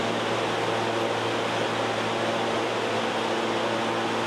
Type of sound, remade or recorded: recorded